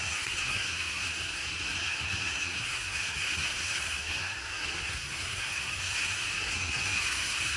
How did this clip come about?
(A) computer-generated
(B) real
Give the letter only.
A